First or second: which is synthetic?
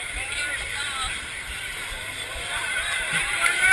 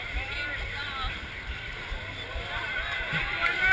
first